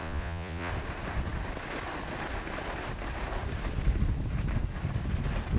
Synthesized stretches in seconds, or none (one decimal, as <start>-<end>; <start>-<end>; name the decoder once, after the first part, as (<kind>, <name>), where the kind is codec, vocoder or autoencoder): 0.0-0.7 (vocoder, Vocos)